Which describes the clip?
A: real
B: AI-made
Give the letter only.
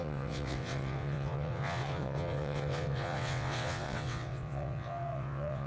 B